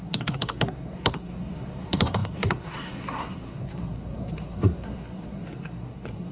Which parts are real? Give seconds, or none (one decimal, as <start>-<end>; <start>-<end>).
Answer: none